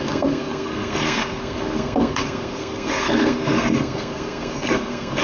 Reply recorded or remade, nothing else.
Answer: remade